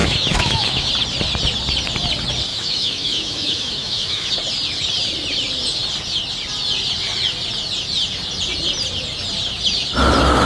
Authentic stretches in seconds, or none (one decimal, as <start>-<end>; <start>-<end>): 0.9-2.5; 4.3-10.5